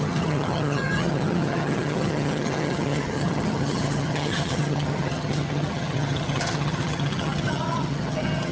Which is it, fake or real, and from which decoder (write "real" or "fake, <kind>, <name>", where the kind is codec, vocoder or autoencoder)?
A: fake, vocoder, HiFi-GAN